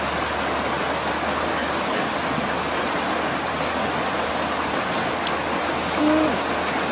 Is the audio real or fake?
real